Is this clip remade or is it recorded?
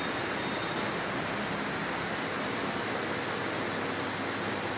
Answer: recorded